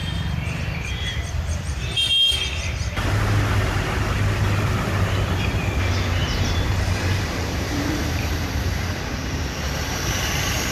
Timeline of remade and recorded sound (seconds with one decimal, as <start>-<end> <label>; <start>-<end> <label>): 0.0-2.1 remade; 2.1-6.2 recorded; 6.2-10.7 remade